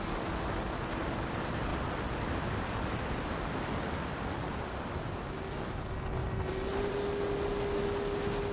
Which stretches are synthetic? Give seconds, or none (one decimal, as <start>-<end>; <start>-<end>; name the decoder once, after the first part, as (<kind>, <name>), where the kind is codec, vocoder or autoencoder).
6.2-7.0 (vocoder, BigVGAN v2)